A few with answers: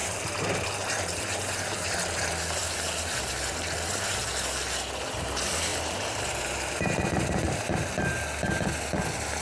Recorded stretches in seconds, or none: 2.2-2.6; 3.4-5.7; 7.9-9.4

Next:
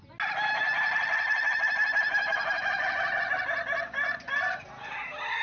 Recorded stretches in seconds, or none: 0.0-2.3; 3.3-5.4

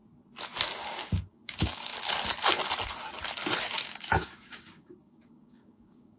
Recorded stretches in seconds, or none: 0.0-0.8; 1.9-3.6

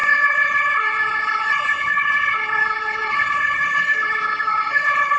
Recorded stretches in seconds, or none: none